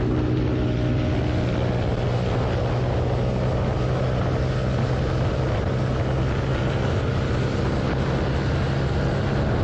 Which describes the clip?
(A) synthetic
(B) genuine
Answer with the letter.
B